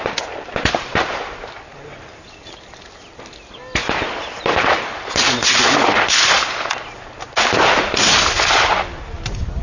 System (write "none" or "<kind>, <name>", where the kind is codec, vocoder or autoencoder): none